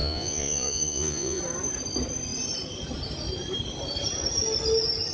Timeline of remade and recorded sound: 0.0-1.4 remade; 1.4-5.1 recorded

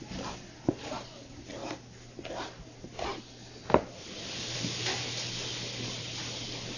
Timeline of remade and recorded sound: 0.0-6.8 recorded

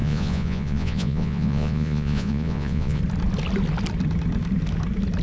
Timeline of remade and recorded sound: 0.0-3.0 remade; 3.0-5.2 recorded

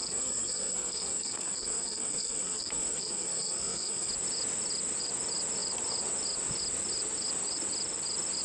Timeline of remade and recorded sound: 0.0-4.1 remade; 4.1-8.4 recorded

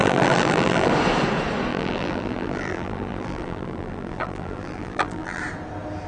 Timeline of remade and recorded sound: 0.0-0.9 remade; 0.9-1.7 recorded; 1.7-5.4 remade; 5.4-6.1 recorded